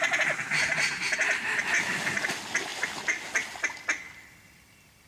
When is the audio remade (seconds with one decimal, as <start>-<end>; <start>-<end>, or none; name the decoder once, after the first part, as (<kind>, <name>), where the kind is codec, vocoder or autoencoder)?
none

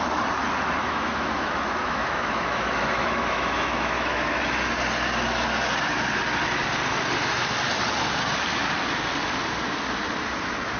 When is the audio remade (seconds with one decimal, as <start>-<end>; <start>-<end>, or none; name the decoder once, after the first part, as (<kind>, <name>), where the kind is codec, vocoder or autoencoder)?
0.8-4.3 (autoencoder, DAC-VAE)

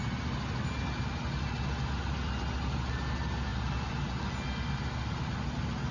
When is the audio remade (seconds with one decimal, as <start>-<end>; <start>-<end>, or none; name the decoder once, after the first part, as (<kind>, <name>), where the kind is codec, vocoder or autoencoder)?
none

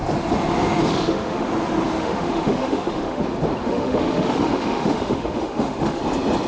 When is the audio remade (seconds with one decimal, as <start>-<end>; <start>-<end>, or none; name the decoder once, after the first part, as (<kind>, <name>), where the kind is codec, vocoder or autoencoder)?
0.9-1.5 (autoencoder, DAC-VAE); 2.0-3.2; 3.6-6.0

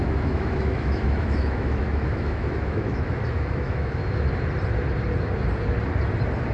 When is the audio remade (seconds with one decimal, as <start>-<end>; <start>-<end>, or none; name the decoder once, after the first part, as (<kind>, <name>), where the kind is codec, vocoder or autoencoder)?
0.0-4.0 (autoencoder, DAC-VAE)

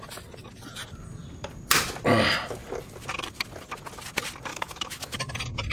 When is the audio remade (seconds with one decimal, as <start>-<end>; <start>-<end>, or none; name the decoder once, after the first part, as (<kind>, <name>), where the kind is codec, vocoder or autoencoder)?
4.5-5.3 (autoencoder, DAC-VAE)

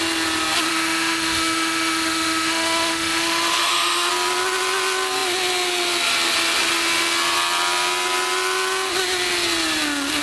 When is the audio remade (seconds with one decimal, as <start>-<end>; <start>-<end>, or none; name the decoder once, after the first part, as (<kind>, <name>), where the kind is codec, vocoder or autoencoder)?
0.7-4.1 (autoencoder, DAC-VAE)